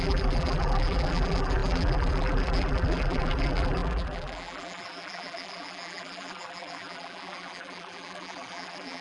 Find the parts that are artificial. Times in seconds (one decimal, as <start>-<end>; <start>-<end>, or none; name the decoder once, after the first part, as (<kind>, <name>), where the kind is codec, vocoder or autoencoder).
0.0-9.0 (vocoder, BigVGAN v2)